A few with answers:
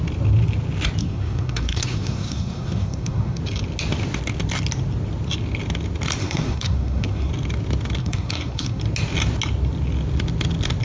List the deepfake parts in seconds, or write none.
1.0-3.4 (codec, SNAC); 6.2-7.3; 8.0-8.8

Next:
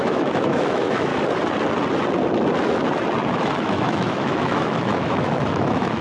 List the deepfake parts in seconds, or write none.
0.0-1.1 (autoencoder, DAC-VAE); 3.3-6.0

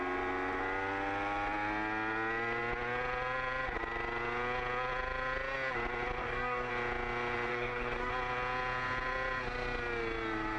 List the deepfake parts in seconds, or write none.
6.2-6.7 (codec, DAC); 7.5-8.1

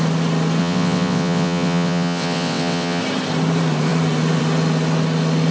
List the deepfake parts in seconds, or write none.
0.6-3.0 (vocoder, WaveNeXt)

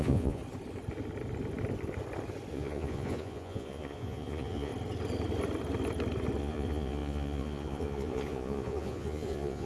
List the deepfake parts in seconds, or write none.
0.0-0.4 (vocoder, Vocos); 2.5-4.7; 6.4-9.7

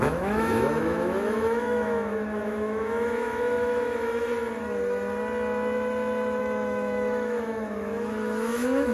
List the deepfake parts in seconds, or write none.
0.0-4.3 (autoencoder, DAC-VAE); 6.4-8.9

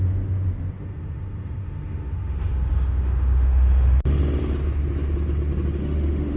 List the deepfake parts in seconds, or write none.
0.8-4.0 (autoencoder, DAC-VAE); 5.8-6.4

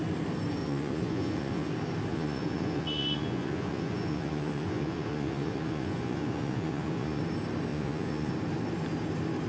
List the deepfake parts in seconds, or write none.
0.6-1.7 (vocoder, Vocos); 2.1-7.2; 7.7-8.3